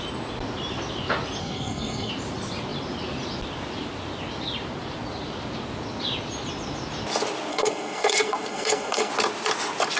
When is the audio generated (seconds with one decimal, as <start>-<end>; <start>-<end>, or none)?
1.4-2.1; 7.5-9.1